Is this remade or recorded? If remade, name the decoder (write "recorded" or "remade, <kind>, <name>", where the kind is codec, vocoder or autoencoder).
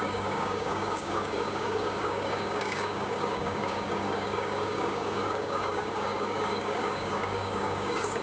remade, codec, DAC